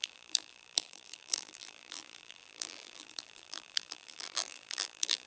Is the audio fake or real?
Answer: fake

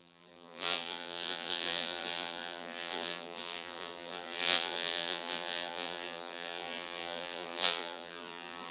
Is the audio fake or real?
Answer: fake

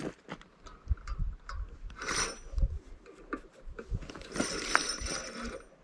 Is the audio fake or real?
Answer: fake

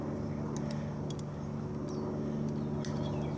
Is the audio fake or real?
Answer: real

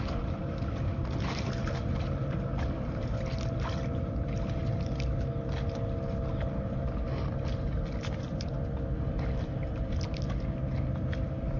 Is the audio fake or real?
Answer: real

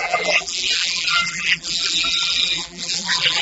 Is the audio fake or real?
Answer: fake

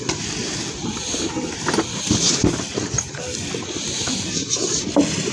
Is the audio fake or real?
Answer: fake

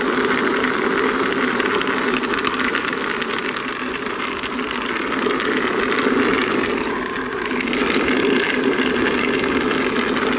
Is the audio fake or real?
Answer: real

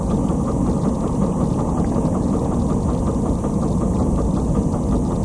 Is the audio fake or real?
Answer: real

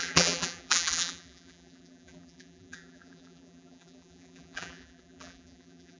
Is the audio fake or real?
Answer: fake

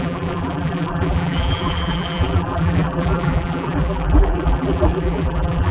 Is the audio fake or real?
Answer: fake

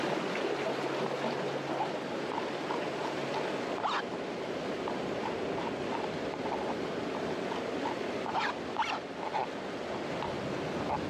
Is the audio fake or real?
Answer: real